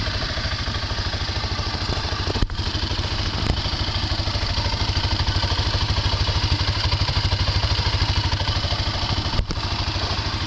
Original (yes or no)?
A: no